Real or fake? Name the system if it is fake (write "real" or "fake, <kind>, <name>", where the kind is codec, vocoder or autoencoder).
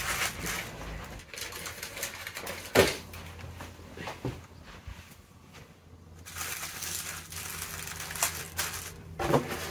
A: real